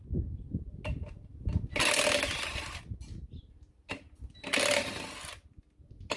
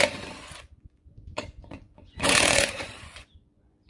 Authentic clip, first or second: first